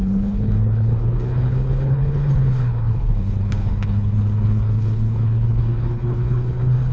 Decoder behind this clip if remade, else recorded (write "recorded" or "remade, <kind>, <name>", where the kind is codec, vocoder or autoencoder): remade, codec, HILCodec